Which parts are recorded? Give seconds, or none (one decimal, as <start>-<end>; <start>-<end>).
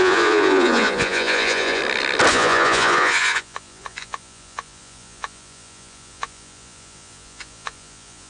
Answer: 1.8-2.3